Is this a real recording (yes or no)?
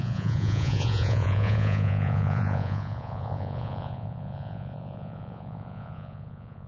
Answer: no